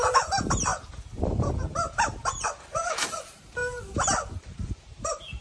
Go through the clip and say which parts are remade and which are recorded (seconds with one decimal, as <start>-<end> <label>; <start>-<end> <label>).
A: 0.0-0.7 remade; 0.7-1.2 recorded; 1.2-5.4 remade